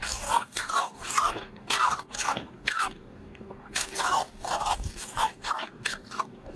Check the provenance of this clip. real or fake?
fake